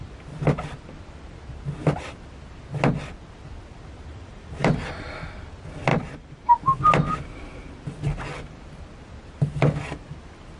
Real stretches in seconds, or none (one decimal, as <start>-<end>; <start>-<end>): 0.0-4.1; 5.1-5.9; 6.5-10.6